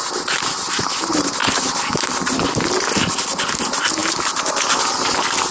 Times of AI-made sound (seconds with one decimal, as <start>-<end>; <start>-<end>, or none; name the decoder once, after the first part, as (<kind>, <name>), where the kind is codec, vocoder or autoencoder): none